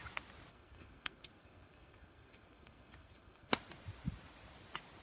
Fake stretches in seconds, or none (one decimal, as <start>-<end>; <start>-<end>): 0.5-3.5